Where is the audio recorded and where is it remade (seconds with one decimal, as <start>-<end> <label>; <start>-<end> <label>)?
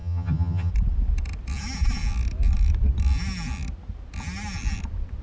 0.0-0.7 remade; 0.7-5.2 recorded